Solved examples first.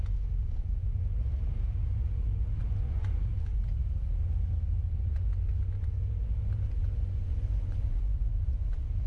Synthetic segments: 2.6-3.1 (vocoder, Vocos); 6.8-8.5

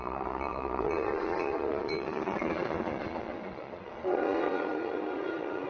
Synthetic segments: 0.0-5.7 (vocoder, Vocos)

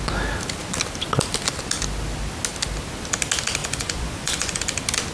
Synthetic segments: 3.6-4.6 (vocoder, Vocos)

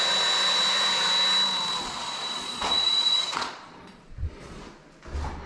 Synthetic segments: 2.0-4.6 (vocoder, Vocos)

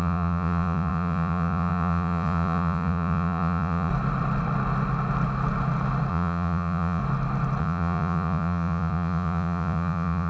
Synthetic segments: 0.0-3.9 (vocoder, Vocos); 6.1-7.0; 7.6-10.3

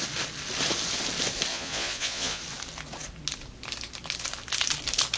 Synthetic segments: 1.5-2.4 (vocoder, Vocos)

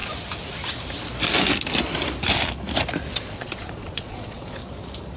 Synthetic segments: 3.1-4.6 (vocoder, Vocos)

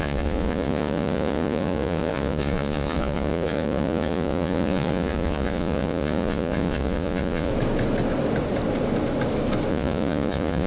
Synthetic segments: 0.0-7.5 (vocoder, Vocos); 9.7-10.7